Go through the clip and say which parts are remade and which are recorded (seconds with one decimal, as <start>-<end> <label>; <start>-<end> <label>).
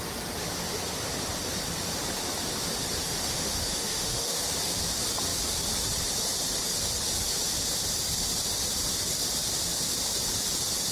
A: 0.0-3.0 recorded; 3.0-4.4 remade; 4.4-10.9 recorded